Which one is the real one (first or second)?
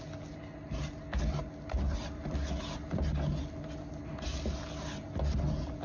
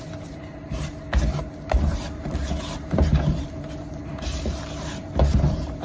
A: first